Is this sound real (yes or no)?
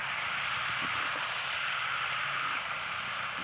yes